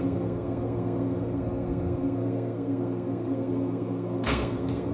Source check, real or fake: fake